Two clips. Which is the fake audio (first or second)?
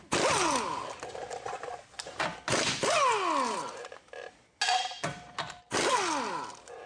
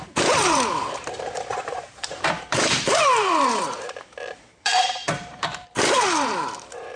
second